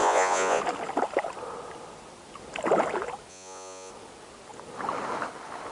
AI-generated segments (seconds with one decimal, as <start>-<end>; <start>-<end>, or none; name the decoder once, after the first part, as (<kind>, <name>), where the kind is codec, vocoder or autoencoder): 0.0-0.6 (vocoder, Vocos); 3.3-3.9